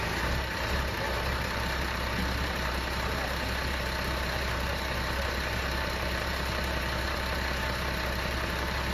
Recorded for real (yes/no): no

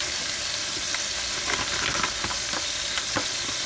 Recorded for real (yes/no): no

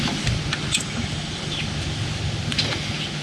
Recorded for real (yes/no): yes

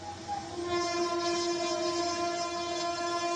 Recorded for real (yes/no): no